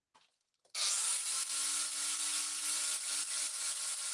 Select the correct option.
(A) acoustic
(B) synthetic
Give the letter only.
A